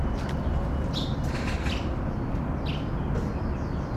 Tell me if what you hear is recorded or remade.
recorded